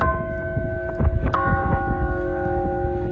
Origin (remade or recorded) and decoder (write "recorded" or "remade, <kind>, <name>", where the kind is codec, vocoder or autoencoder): remade, autoencoder, DAC-VAE